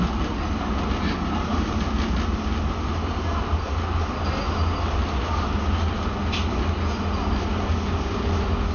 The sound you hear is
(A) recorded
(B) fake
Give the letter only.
A